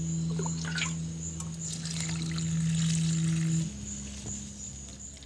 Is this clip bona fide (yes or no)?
yes